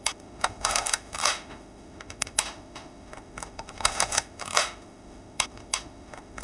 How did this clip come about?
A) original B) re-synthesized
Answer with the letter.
B